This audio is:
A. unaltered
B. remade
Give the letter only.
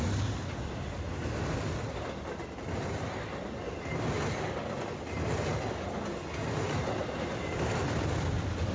A